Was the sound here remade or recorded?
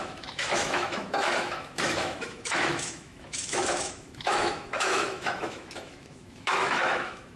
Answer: remade